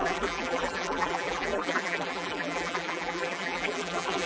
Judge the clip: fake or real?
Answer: fake